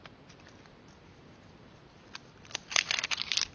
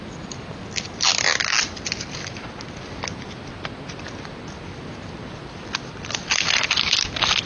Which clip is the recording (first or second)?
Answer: second